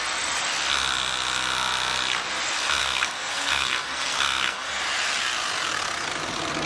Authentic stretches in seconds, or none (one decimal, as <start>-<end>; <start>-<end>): 0.0-2.8; 4.8-6.7